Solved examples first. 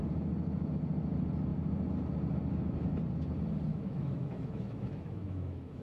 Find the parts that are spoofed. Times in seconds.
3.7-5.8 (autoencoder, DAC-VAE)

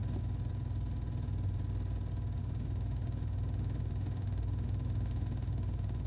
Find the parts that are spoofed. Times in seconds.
2.4-6.1 (autoencoder, DAC-VAE)

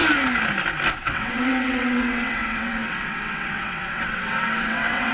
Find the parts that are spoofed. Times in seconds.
0.9-5.1 (vocoder, WaveNeXt)